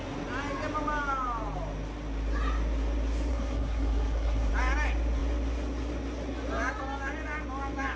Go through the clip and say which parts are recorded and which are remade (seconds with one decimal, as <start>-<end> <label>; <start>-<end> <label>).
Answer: 0.0-3.3 recorded; 3.3-4.5 remade; 4.5-8.0 recorded